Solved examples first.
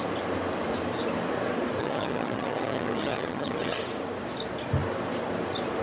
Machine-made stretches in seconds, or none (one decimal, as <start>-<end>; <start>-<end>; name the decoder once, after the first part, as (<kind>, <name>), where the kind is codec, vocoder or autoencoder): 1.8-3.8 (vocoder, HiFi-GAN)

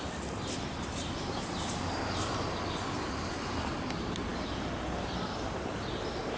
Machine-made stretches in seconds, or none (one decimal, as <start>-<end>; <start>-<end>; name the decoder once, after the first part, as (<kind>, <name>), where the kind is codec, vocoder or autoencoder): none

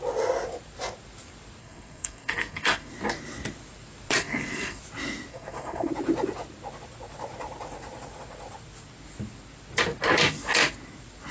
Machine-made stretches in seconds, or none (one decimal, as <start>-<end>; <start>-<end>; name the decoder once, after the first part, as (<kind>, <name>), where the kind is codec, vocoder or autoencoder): 1.6-2.9 (codec, SNAC); 4.2-4.8; 5.3-5.9